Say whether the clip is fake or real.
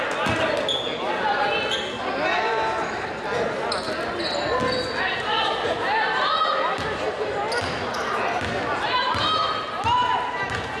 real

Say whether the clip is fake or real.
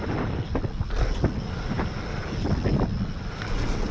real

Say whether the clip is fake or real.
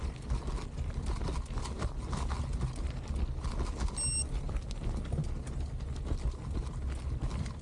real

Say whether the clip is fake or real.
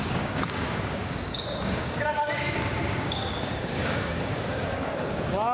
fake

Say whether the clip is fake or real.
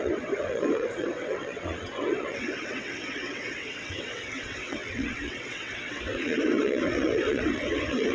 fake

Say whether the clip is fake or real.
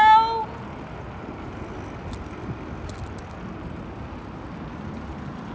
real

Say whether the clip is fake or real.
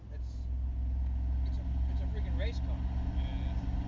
real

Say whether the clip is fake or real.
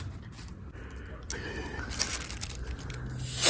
real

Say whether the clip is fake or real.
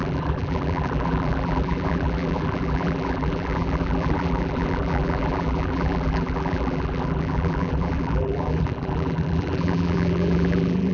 fake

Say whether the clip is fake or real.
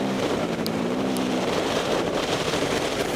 fake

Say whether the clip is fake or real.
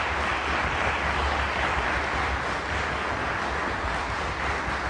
real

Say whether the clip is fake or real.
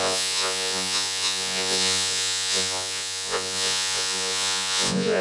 fake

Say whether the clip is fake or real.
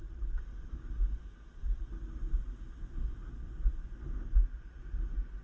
real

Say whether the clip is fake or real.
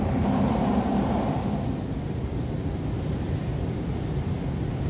real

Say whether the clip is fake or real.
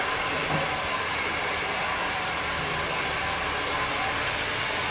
real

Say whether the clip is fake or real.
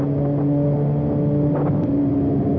real